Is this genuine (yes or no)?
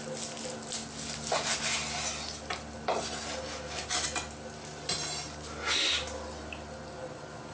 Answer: yes